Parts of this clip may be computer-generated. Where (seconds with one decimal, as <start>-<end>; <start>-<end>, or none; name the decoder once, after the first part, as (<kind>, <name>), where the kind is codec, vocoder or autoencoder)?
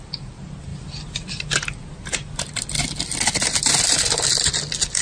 none